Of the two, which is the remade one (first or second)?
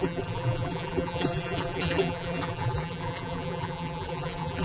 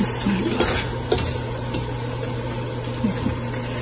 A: first